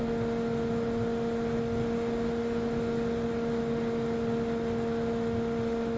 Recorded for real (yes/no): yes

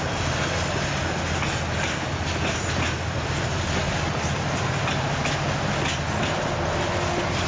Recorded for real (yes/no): yes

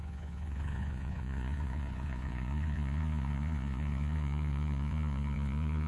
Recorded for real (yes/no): no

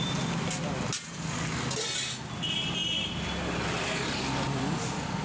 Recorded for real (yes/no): yes